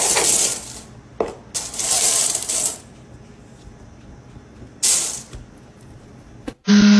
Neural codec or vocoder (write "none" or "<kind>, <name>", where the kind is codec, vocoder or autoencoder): none